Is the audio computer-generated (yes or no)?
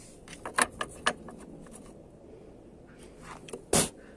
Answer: no